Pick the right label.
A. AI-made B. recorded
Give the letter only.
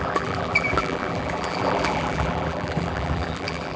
A